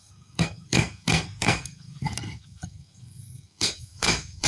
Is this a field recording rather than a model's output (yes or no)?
no